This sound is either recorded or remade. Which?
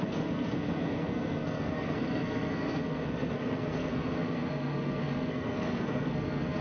remade